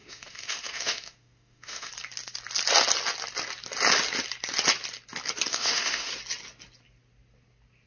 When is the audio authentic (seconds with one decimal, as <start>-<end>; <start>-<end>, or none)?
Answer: 1.9-5.5; 6.1-7.9